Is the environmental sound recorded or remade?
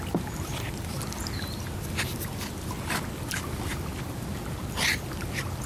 recorded